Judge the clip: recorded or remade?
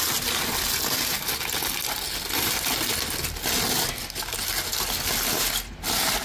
recorded